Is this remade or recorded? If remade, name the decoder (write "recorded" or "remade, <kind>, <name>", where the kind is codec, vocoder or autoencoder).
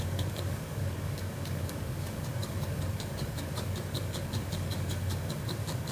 remade, codec, DAC